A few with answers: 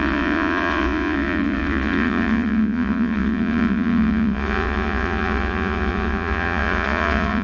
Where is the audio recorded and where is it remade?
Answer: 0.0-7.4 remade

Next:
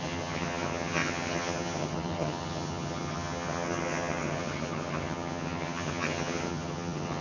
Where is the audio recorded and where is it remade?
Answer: 0.0-7.2 remade

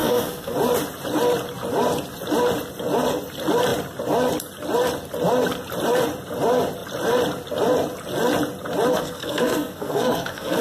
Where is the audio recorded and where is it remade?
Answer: 0.0-0.5 remade; 0.5-8.9 recorded; 8.9-10.6 remade

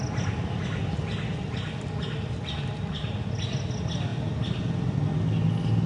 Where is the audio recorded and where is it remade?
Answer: 0.0-5.9 recorded